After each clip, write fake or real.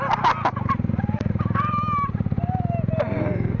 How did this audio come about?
real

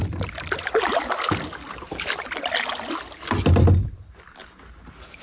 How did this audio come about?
real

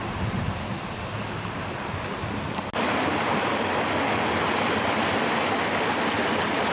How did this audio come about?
real